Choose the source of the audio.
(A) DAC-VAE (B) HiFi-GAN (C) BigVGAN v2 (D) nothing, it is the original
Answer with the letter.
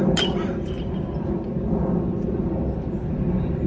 D